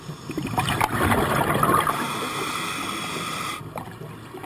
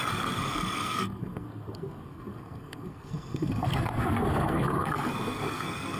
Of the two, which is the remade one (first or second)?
second